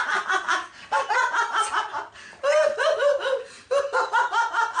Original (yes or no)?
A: yes